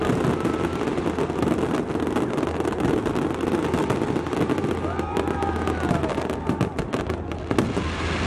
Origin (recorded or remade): recorded